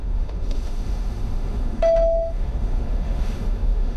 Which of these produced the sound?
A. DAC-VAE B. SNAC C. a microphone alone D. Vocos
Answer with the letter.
A